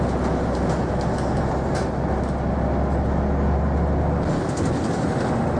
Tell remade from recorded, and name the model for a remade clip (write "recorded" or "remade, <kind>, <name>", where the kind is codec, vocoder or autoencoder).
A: recorded